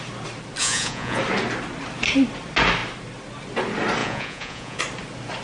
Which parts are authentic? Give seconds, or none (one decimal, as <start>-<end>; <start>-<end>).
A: 0.0-0.6; 1.2-4.0; 4.8-5.4